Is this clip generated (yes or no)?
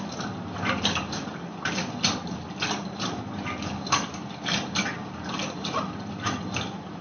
no